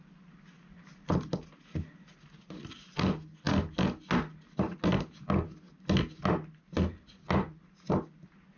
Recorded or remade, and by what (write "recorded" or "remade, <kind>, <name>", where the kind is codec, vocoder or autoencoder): recorded